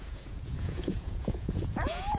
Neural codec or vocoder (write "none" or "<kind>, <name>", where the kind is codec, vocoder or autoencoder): vocoder, Vocos